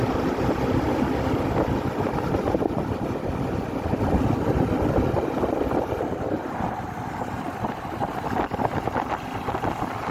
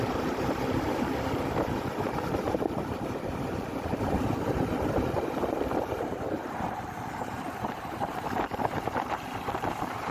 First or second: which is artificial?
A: second